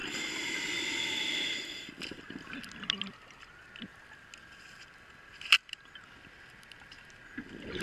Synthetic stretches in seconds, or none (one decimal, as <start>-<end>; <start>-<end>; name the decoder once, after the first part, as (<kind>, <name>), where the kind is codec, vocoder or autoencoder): none